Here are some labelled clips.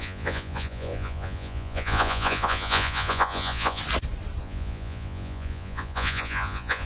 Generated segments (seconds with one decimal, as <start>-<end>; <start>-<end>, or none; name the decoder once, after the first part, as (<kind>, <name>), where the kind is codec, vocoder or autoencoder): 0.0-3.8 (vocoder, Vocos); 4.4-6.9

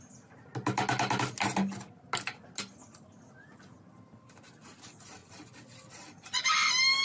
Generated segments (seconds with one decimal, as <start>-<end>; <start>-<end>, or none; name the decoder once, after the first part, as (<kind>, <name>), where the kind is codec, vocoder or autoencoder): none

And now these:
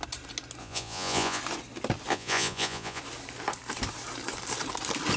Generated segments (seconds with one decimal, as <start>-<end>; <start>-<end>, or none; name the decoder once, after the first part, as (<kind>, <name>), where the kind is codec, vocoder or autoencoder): 0.6-1.4 (vocoder, Vocos); 2.1-3.0

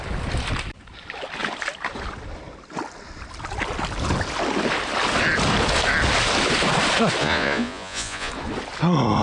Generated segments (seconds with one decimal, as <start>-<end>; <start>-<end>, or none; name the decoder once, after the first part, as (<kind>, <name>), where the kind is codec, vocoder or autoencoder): 7.2-8.3 (vocoder, Vocos)